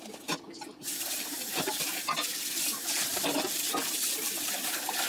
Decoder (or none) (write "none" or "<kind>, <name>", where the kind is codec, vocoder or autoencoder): vocoder, BigVGAN v2